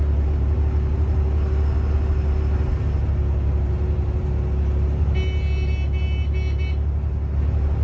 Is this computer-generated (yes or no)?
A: no